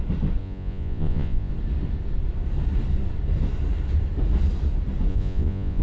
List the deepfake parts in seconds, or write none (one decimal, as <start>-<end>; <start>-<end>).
0.4-1.5; 5.1-5.8